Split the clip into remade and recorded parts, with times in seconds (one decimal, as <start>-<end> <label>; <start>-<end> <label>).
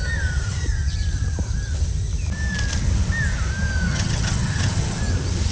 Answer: 0.0-3.9 recorded; 3.9-5.0 remade; 5.0-5.5 recorded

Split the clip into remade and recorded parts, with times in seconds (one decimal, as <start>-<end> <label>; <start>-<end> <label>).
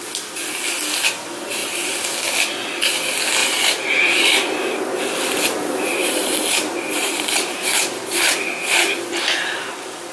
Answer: 0.0-3.4 recorded; 3.4-5.0 remade; 5.0-6.0 recorded; 6.0-8.9 remade; 8.9-10.1 recorded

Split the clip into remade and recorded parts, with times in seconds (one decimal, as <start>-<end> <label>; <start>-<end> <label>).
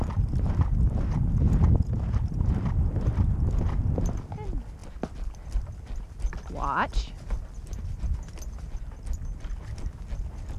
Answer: 0.0-10.6 recorded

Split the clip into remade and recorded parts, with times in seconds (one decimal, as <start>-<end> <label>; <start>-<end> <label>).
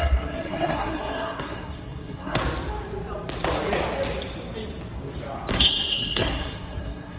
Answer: 0.0-2.4 remade; 2.4-5.5 recorded; 5.5-7.2 remade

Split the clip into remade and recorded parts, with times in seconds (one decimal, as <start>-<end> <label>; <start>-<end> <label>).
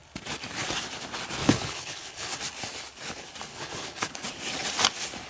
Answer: 0.0-1.4 recorded; 1.4-2.4 remade; 2.4-3.5 recorded; 3.5-4.1 remade; 4.1-5.3 recorded